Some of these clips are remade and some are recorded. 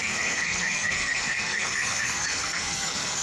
remade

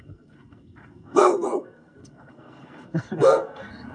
remade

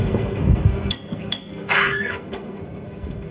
remade